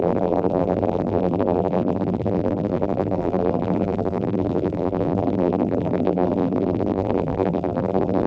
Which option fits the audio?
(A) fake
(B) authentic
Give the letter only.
A